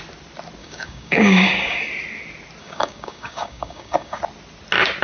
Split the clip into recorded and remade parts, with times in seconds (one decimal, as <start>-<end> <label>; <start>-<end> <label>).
0.0-0.6 recorded; 0.6-1.9 remade; 1.9-2.6 recorded; 2.6-4.2 remade; 4.2-5.0 recorded